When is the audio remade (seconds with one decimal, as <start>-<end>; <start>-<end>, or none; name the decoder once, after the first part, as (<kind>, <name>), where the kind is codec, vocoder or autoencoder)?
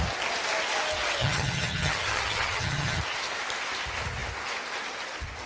1.2-3.0 (vocoder, HiFi-GAN)